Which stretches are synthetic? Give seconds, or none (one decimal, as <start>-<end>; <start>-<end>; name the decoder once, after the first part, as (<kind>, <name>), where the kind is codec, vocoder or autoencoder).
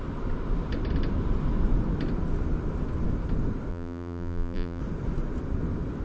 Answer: 3.7-4.8 (vocoder, BigVGAN v2)